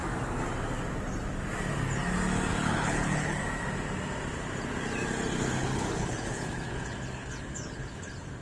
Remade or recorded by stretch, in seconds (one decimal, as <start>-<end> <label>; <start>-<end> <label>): 0.0-2.5 recorded; 2.5-3.4 remade; 3.4-5.4 recorded; 5.4-8.4 remade